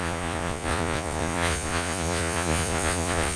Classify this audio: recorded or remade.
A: remade